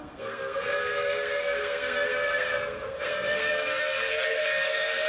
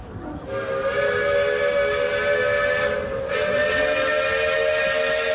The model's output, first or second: first